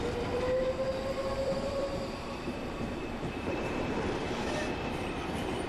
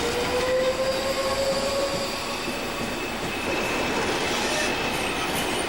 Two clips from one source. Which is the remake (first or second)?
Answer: first